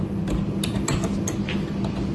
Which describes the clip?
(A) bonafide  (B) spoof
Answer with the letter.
A